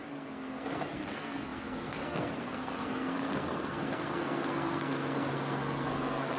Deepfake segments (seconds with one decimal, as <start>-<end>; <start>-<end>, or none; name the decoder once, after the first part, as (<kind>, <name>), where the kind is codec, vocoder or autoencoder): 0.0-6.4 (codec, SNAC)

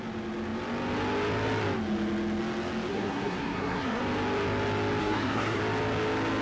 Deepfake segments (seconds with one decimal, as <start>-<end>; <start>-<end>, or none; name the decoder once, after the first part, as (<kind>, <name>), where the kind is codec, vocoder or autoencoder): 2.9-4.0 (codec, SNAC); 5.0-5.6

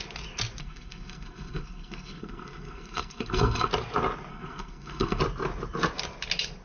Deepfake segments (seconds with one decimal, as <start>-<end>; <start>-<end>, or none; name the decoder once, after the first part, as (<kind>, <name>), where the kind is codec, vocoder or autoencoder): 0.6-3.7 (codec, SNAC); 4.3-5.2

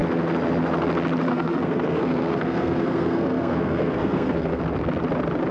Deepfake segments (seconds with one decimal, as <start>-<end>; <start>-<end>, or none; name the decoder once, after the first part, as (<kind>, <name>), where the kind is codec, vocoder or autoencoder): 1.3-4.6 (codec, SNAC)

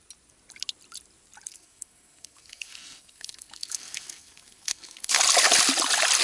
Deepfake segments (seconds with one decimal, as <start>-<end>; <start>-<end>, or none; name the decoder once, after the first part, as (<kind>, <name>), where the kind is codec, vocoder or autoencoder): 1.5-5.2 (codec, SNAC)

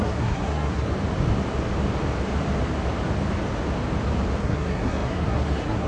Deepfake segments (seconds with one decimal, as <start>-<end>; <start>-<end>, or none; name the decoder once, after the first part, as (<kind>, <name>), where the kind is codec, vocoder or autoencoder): 0.0-0.9 (codec, SNAC); 4.4-5.9